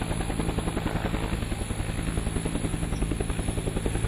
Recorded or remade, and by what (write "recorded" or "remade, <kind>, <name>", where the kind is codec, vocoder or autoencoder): recorded